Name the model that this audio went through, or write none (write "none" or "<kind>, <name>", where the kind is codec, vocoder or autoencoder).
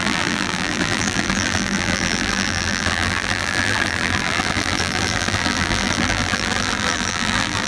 vocoder, BigVGAN v2